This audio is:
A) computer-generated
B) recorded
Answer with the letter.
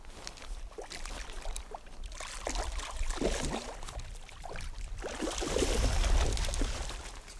B